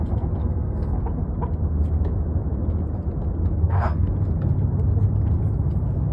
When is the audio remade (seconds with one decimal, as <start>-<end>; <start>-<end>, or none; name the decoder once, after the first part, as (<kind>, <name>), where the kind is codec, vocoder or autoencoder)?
0.4-1.0 (codec, SNAC); 3.6-4.1